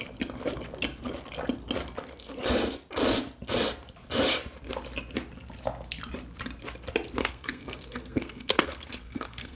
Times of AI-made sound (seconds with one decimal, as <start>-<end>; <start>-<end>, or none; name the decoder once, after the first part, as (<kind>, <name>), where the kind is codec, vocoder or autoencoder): 7.2-9.6 (codec, SNAC)